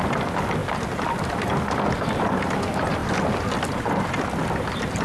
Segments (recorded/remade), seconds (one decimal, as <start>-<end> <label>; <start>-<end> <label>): 0.0-3.0 recorded; 3.0-3.9 remade; 3.9-5.0 recorded